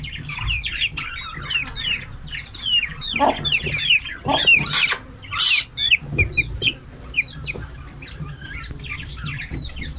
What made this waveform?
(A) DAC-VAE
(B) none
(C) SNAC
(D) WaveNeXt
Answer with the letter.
B